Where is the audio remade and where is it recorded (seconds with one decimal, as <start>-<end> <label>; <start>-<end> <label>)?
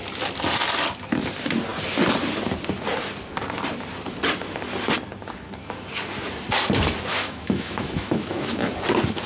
0.0-7.1 recorded; 7.1-8.7 remade; 8.7-9.3 recorded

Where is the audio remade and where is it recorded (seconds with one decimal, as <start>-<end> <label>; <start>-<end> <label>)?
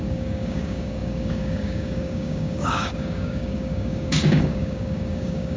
0.0-5.6 remade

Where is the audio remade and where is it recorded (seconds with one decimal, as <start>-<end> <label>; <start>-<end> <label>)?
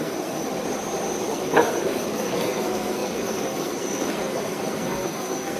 0.0-0.4 remade; 0.4-1.2 recorded; 1.2-5.6 remade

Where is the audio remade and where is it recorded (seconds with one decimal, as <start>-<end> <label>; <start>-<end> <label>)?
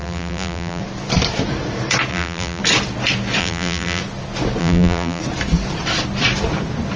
0.0-0.8 remade; 0.8-2.1 recorded; 2.1-2.6 remade; 2.6-3.4 recorded; 3.4-4.0 remade; 4.0-4.6 recorded; 4.6-5.2 remade; 5.2-7.0 recorded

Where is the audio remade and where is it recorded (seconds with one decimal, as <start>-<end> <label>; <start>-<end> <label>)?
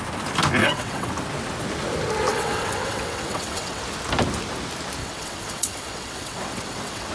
0.0-0.6 recorded; 0.6-1.1 remade; 1.1-2.3 recorded; 2.3-3.8 remade; 3.8-5.0 recorded; 5.0-7.1 remade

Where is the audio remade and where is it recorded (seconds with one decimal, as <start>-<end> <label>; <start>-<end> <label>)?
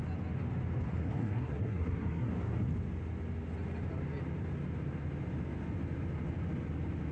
0.0-0.9 recorded; 0.9-2.3 remade; 2.3-7.1 recorded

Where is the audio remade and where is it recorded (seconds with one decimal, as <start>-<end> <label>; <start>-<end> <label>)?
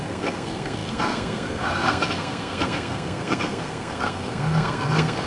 0.0-5.3 remade